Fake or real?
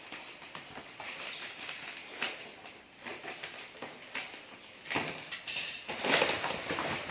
real